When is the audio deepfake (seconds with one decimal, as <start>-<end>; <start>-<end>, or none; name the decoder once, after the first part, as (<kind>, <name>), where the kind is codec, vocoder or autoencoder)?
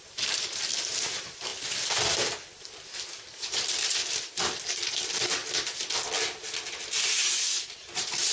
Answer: 0.0-1.5 (vocoder, BigVGAN v2); 3.3-5.4; 6.7-8.3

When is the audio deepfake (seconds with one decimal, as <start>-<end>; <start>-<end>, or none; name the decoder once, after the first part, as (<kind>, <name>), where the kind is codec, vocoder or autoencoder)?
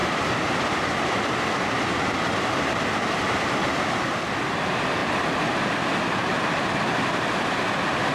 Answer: 0.0-3.0 (vocoder, BigVGAN v2)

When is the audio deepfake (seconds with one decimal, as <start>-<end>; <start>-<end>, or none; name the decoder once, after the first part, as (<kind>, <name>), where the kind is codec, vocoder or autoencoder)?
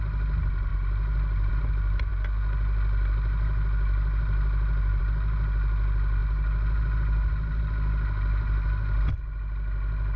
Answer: none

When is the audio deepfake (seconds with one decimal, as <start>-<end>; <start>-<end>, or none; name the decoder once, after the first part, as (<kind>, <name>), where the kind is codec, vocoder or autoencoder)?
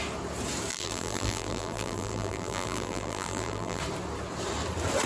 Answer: 0.7-3.8 (vocoder, BigVGAN v2)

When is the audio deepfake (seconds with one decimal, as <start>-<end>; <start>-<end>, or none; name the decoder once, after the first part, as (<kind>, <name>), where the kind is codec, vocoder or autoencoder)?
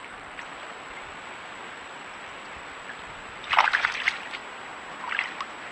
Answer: 0.0-3.4 (vocoder, BigVGAN v2)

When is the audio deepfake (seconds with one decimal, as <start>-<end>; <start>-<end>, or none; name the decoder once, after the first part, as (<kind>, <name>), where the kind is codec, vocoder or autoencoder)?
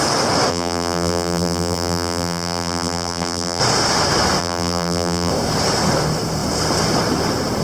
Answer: 0.5-3.6 (vocoder, BigVGAN v2); 4.4-5.3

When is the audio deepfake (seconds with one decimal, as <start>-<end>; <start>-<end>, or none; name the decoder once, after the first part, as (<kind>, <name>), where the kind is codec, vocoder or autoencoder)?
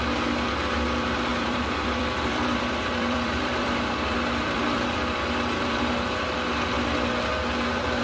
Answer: 1.3-5.8 (vocoder, BigVGAN v2)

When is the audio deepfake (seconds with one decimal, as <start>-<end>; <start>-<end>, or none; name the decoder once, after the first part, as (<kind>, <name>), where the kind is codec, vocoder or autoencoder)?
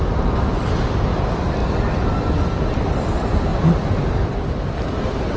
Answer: 3.5-5.4 (vocoder, BigVGAN v2)